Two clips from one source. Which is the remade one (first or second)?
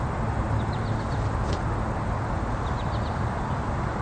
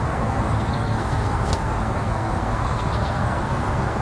second